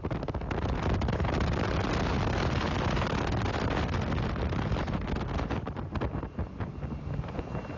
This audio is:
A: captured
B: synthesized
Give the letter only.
A